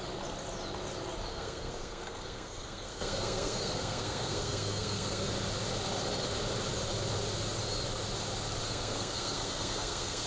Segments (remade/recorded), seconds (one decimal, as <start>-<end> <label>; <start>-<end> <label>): 0.0-1.3 recorded; 1.3-5.3 remade; 5.3-8.6 recorded; 8.6-10.3 remade